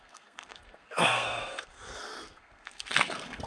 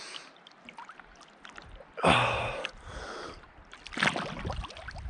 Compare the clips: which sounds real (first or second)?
second